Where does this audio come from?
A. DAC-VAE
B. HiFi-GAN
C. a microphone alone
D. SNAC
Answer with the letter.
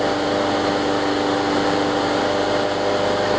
C